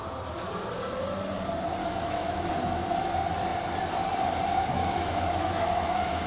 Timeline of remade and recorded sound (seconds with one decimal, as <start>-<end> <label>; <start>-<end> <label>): 0.0-1.8 recorded; 1.8-2.5 remade; 2.5-4.8 recorded; 4.8-6.3 remade